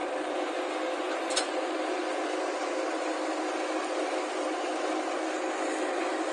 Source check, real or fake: real